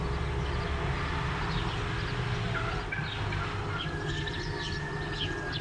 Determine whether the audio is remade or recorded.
recorded